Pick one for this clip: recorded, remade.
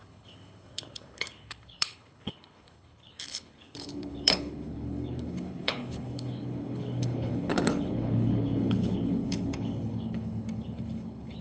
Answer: remade